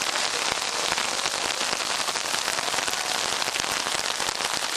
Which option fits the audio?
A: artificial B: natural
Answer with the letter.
B